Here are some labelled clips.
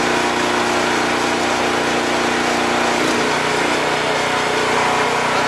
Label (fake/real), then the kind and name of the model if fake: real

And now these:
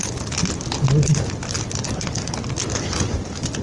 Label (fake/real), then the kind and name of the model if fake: real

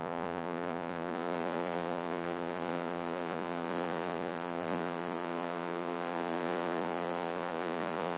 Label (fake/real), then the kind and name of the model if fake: fake, vocoder, Vocos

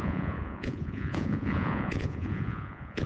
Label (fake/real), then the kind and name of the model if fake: fake, vocoder, Vocos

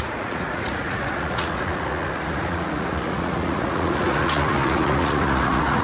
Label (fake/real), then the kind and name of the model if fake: fake, vocoder, Vocos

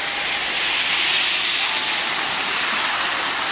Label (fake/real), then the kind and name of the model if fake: real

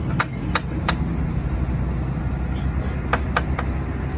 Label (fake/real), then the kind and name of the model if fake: real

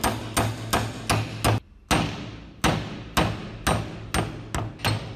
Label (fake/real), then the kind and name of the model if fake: real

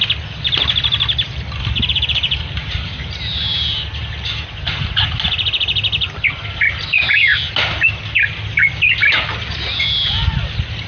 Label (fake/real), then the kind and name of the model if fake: real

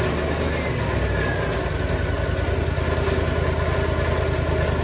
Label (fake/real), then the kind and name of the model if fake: real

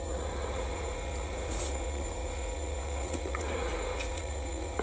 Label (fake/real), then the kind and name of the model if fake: fake, vocoder, Vocos